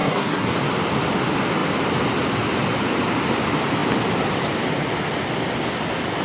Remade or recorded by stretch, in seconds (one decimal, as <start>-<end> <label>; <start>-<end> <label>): 0.0-0.5 remade; 0.5-6.2 recorded